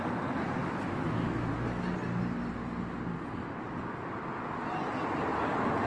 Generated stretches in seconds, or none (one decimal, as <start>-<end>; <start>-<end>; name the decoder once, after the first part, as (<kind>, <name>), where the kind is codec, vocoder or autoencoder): 0.6-1.5 (autoencoder, DAC-VAE)